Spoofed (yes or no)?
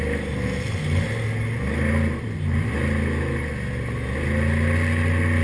no